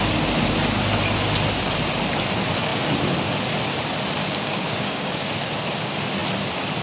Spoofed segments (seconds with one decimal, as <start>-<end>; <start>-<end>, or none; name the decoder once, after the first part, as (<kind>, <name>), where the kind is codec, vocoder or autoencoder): 4.2-5.2 (codec, DAC)